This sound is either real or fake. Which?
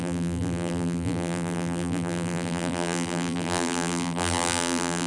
fake